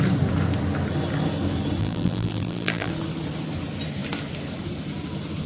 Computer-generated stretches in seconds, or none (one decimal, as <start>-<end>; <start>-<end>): 1.8-2.9